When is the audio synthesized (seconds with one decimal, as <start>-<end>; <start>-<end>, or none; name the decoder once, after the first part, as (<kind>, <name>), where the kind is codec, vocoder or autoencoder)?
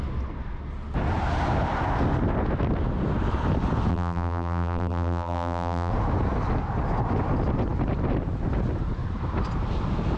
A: 3.9-5.9 (vocoder, BigVGAN v2)